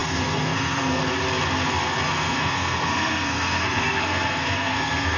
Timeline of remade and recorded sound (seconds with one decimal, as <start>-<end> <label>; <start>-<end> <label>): 0.0-1.0 remade; 1.0-2.1 recorded; 2.1-5.2 remade